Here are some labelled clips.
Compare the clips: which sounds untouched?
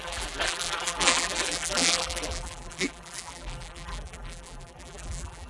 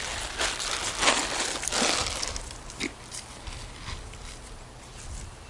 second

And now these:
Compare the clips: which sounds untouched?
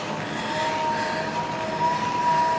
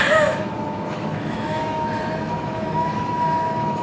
first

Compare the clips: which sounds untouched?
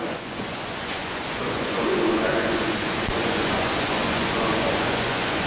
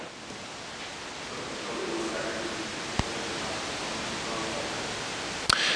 second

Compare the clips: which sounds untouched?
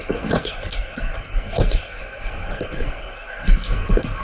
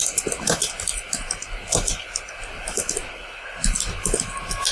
second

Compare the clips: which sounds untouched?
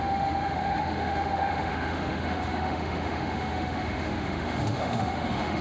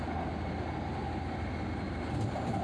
second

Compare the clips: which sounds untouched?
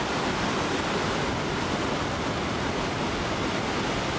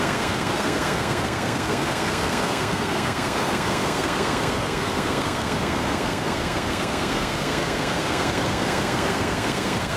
first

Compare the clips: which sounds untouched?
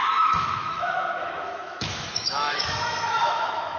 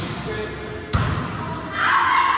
second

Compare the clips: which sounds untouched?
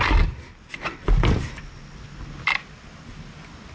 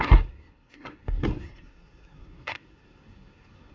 first